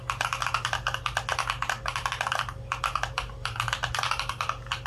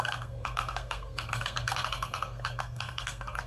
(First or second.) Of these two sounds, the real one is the first